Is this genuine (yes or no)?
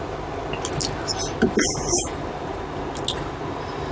yes